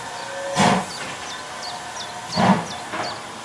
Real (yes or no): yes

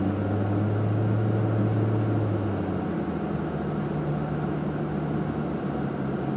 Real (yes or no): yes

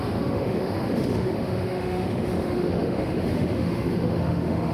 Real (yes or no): no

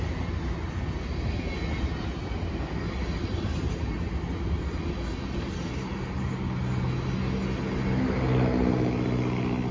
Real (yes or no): yes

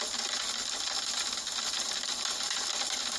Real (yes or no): yes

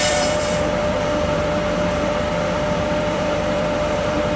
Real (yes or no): no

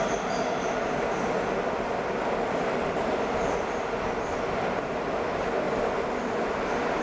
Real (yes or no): yes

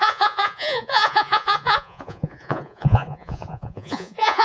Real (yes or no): no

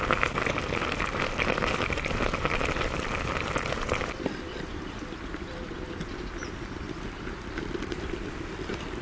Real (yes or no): no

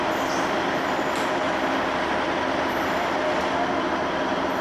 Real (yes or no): yes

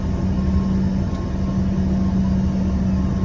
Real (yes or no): yes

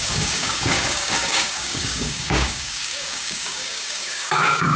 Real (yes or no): no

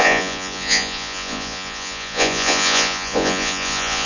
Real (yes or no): no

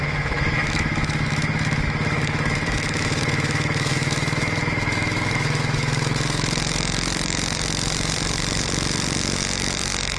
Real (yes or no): no